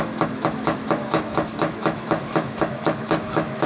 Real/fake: fake